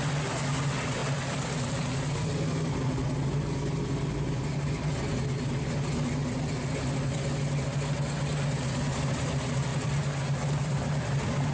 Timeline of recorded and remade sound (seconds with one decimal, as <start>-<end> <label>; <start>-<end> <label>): 0.0-1.0 recorded; 1.0-2.4 remade; 2.4-9.7 recorded; 9.7-11.1 remade; 11.1-11.5 recorded